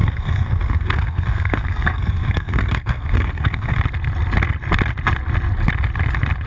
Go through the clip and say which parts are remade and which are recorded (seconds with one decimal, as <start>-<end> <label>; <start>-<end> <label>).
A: 0.0-3.8 remade; 3.8-6.5 recorded